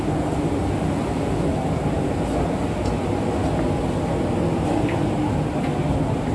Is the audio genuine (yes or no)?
yes